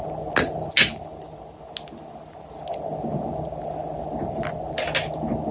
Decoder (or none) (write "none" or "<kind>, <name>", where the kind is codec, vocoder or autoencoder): none